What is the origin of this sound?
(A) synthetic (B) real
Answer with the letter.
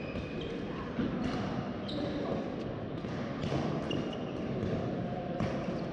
B